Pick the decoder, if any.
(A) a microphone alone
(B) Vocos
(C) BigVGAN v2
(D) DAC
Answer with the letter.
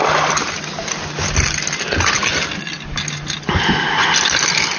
A